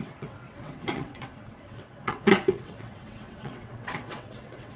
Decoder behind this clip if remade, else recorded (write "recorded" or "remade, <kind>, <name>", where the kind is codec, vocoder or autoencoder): remade, vocoder, WaveNeXt